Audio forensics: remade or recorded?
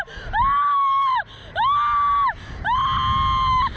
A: recorded